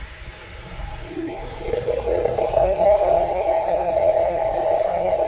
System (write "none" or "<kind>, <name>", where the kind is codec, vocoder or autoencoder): codec, SNAC